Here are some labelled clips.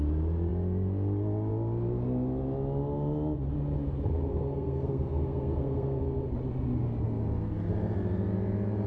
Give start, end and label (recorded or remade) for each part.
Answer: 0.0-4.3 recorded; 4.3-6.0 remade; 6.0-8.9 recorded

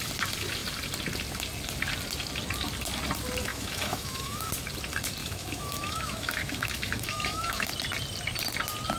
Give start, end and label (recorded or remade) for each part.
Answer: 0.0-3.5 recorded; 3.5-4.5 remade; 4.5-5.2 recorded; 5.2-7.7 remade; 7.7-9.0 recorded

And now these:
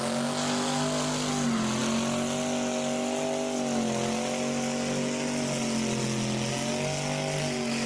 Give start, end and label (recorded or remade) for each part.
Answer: 0.0-7.9 recorded

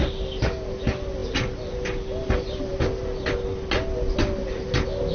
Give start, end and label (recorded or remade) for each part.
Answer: 0.0-5.1 recorded

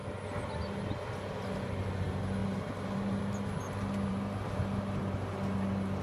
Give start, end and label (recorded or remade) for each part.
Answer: 0.0-2.4 recorded; 2.4-3.2 remade; 3.2-4.1 recorded; 4.1-5.0 remade; 5.0-6.0 recorded

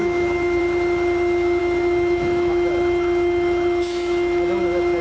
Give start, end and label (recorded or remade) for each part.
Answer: 0.0-0.6 remade; 0.6-1.6 recorded; 1.6-4.6 remade; 4.6-5.0 recorded